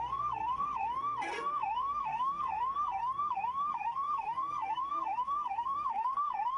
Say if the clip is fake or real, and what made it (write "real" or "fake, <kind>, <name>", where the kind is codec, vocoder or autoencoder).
fake, codec, SNAC